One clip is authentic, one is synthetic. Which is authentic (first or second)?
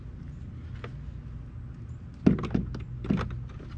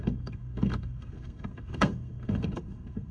first